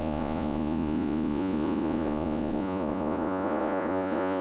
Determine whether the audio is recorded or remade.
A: remade